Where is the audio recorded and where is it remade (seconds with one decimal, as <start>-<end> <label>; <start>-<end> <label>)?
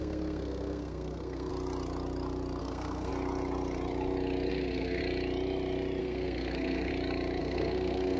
0.0-1.5 remade; 1.5-2.6 recorded; 2.6-3.1 remade; 3.1-4.5 recorded; 4.5-5.0 remade; 5.0-6.0 recorded; 6.0-6.9 remade; 6.9-7.4 recorded; 7.4-8.2 remade